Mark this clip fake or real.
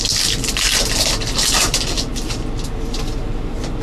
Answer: real